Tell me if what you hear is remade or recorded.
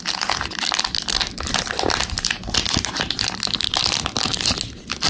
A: recorded